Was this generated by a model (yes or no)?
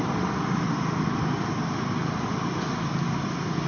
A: no